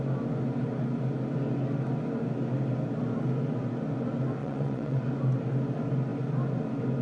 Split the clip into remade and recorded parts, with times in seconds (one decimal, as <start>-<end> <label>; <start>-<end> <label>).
0.0-4.4 recorded; 4.4-5.0 remade; 5.0-7.0 recorded